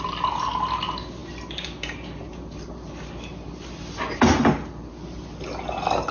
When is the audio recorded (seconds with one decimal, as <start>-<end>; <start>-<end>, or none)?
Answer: 0.0-6.1